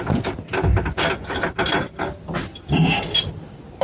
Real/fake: real